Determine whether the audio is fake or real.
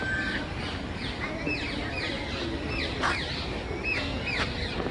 real